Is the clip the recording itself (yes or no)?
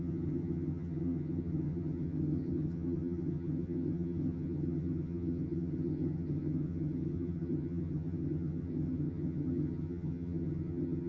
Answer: no